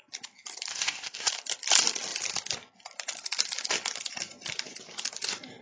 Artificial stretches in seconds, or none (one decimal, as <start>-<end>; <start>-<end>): 0.7-1.3